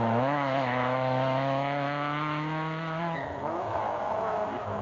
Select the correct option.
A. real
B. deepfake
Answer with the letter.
B